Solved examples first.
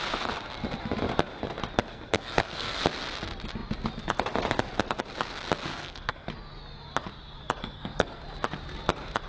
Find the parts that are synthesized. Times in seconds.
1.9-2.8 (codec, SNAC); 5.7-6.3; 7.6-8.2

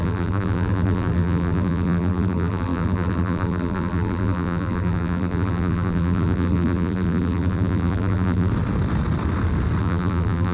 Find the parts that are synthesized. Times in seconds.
0.0-8.5 (vocoder, BigVGAN v2); 9.8-10.5

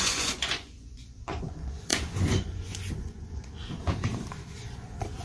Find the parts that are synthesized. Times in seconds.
0.0-5.2 (vocoder, Vocos)

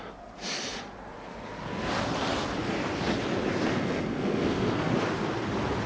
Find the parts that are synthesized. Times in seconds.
3.7-4.9 (codec, SNAC)